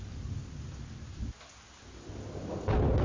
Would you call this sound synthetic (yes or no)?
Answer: no